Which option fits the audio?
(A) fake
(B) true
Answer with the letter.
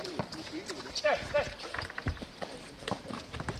A